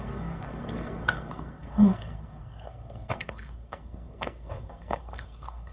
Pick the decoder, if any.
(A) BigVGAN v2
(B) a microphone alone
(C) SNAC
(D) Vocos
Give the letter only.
C